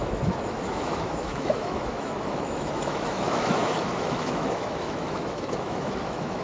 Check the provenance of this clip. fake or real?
fake